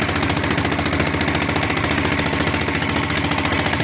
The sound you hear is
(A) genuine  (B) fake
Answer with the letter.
A